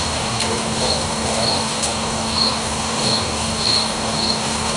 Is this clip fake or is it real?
fake